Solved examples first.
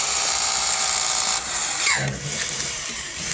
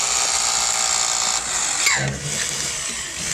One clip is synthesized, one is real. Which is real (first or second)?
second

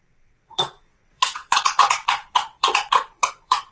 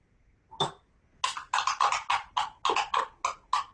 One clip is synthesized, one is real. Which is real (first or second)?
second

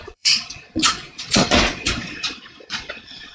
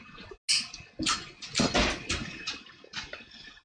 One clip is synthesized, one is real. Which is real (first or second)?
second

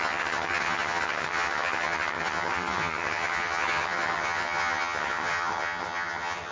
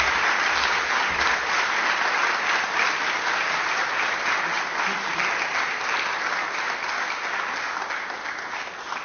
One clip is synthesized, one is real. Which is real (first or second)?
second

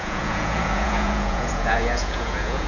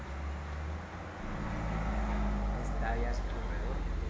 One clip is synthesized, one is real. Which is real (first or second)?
second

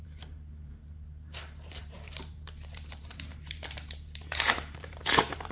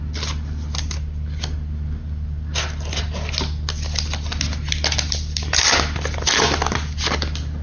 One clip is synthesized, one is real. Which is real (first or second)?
second